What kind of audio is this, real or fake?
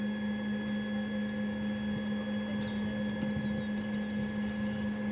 real